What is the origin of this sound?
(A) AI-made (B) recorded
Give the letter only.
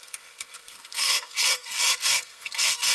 A